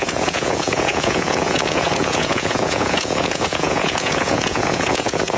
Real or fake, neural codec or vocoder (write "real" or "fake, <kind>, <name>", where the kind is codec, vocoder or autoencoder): fake, vocoder, Vocos